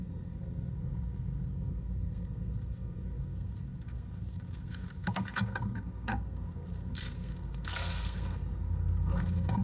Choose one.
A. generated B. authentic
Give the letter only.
A